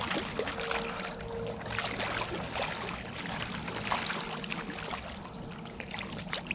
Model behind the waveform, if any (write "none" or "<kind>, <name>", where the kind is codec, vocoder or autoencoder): none